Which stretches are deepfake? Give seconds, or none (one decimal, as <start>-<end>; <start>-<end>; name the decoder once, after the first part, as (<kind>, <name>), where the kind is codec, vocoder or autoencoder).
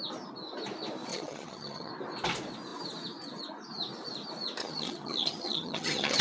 1.1-1.9 (vocoder, HiFi-GAN); 4.6-6.2